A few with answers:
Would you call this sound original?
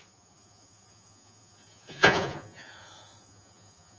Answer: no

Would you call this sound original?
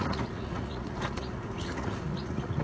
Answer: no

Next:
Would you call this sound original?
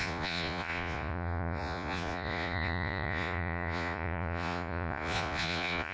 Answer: no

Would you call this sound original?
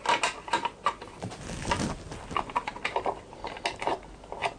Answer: yes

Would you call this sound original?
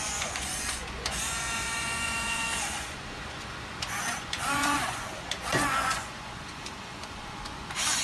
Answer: no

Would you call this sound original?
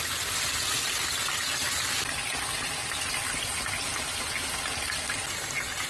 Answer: yes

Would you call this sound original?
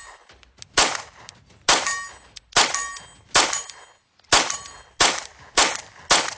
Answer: yes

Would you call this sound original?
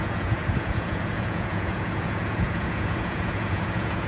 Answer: no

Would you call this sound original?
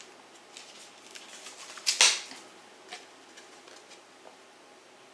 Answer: yes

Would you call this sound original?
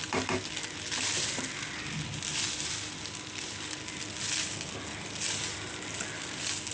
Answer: yes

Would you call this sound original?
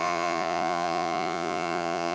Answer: no